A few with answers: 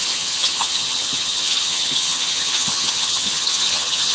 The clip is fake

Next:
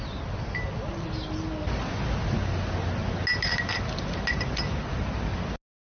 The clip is real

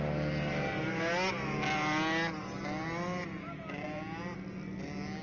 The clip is real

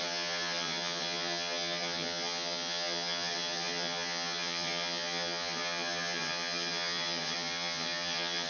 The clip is fake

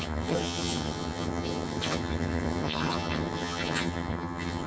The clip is fake